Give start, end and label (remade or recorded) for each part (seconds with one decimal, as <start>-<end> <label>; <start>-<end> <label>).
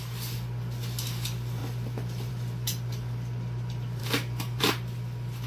0.0-4.0 recorded; 4.0-4.6 remade; 4.6-5.5 recorded